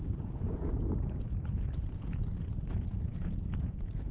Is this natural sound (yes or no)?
no